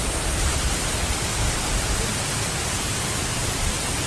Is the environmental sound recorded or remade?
recorded